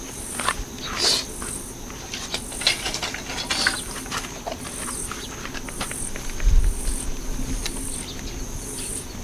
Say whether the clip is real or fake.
real